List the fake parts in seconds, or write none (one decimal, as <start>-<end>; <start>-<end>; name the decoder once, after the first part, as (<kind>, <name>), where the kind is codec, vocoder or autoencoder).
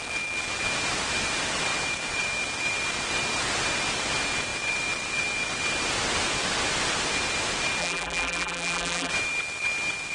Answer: 7.8-9.1 (vocoder, BigVGAN v2)